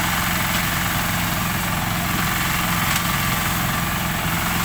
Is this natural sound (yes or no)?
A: yes